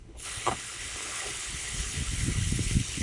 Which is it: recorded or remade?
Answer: remade